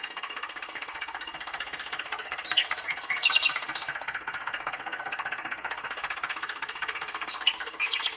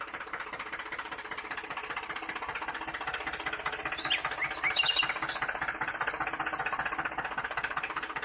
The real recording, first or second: second